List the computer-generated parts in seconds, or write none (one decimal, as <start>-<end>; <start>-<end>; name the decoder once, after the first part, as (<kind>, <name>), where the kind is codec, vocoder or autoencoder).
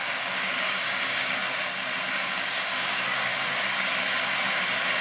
0.0-1.4 (codec, DAC); 2.1-3.3